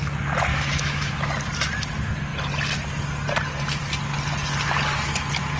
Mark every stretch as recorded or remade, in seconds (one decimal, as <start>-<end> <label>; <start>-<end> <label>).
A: 0.0-0.5 recorded; 0.5-1.3 remade; 1.3-5.6 recorded